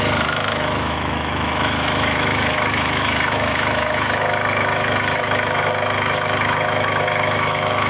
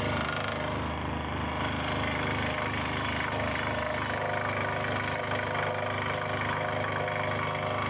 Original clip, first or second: second